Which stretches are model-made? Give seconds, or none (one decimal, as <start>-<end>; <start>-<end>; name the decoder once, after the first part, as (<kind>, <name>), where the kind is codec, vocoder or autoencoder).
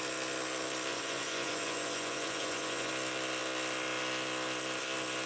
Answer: 0.9-2.9 (vocoder, Vocos)